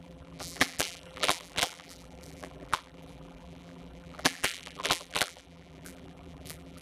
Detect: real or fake fake